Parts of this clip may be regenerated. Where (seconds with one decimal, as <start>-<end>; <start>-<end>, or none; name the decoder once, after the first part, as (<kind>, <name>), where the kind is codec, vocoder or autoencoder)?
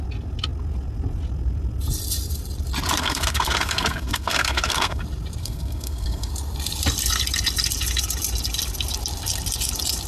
3.0-5.0 (codec, SNAC); 5.4-6.3